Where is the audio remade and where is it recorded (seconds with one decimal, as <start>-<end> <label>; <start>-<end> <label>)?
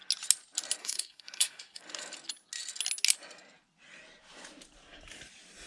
0.0-0.8 recorded; 0.8-1.8 remade; 1.8-5.7 recorded